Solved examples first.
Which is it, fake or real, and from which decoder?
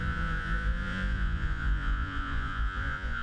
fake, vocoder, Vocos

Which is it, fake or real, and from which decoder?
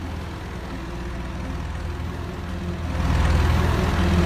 real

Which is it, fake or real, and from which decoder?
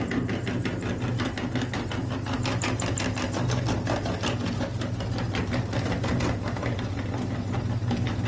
real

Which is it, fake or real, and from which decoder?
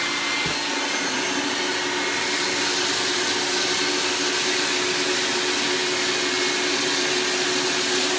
real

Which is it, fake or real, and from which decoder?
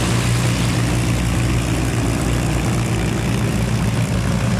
real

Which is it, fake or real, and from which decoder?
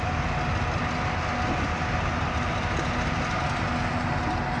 real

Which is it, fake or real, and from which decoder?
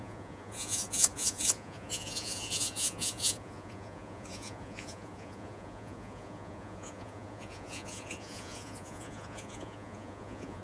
fake, vocoder, Vocos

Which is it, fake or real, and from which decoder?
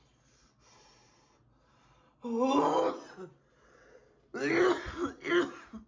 real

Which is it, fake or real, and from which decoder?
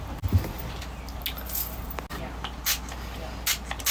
real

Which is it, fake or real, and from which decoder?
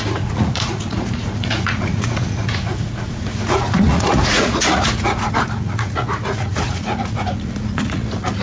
fake, vocoder, Vocos